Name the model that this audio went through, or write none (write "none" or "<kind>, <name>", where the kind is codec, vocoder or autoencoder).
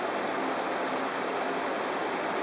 none